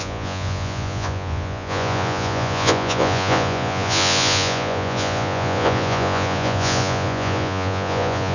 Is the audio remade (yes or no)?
yes